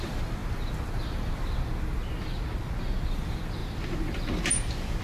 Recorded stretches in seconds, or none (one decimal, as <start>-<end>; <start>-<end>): 0.0-5.0